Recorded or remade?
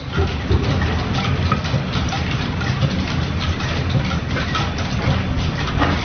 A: recorded